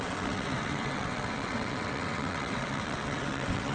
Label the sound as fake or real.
fake